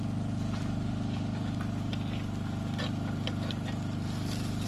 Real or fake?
real